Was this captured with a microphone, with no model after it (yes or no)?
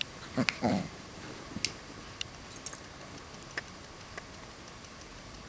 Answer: yes